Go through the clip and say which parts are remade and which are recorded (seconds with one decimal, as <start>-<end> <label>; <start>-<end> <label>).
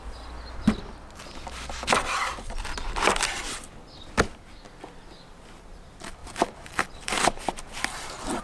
0.0-6.2 recorded; 6.2-7.4 remade; 7.4-8.4 recorded